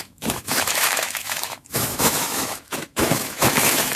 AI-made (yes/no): yes